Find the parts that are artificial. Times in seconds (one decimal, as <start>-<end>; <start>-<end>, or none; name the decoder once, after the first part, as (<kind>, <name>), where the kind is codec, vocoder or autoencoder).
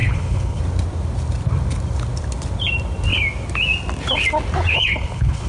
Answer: 0.0-0.6 (codec, HILCodec); 4.7-5.5